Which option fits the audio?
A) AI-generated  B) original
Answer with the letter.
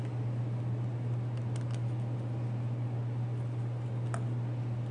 B